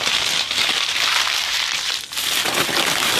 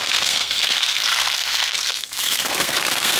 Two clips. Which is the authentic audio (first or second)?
first